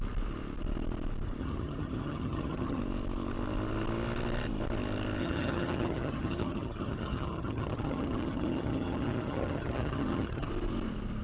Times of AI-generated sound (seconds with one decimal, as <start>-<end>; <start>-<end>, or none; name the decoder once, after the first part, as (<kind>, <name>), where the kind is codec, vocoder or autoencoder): 1.4-2.8 (vocoder, HiFi-GAN); 5.2-10.5